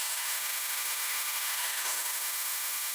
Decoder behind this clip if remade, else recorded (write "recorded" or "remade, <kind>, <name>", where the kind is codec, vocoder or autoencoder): remade, autoencoder, DAC-VAE